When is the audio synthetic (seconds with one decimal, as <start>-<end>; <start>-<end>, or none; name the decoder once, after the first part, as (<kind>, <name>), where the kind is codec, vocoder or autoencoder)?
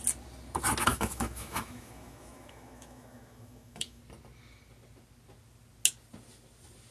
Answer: 0.9-4.0 (autoencoder, DAC-VAE)